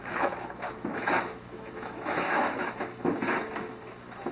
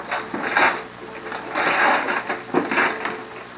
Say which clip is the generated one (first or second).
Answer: first